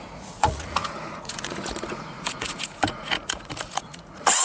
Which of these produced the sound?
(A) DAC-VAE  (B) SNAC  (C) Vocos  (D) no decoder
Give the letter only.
C